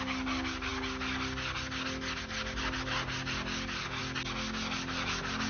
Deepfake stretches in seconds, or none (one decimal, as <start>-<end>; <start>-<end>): none